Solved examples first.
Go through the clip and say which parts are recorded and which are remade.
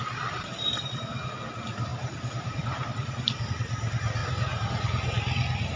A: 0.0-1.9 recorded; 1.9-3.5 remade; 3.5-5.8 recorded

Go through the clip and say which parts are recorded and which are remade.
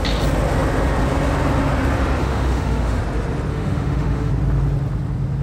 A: 0.0-2.2 recorded; 2.2-3.0 remade; 3.0-3.5 recorded; 3.5-4.3 remade; 4.3-5.4 recorded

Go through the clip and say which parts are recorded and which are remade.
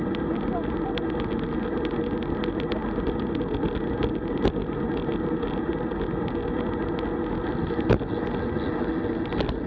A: 0.0-9.7 recorded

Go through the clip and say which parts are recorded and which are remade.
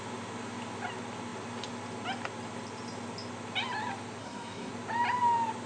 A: 0.0-4.2 recorded; 4.2-4.7 remade; 4.7-5.7 recorded